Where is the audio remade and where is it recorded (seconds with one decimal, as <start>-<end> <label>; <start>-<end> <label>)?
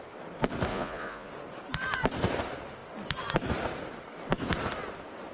0.0-0.7 recorded; 0.7-1.3 remade; 1.3-5.3 recorded